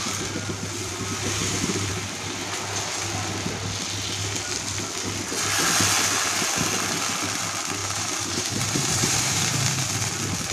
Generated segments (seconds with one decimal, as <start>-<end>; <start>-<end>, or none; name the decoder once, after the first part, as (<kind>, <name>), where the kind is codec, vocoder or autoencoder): 7.8-9.8 (vocoder, BigVGAN v2)